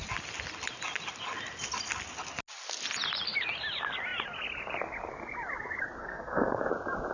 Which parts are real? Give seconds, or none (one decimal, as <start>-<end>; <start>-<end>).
0.0-6.0; 6.6-7.1